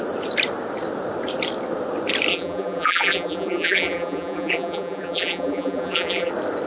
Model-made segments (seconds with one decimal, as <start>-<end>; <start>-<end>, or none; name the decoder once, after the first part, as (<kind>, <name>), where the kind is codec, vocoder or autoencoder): 2.3-6.3 (vocoder, BigVGAN v2)